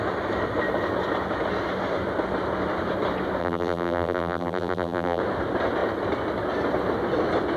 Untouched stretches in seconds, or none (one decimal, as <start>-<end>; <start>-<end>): 0.0-3.4; 5.2-7.6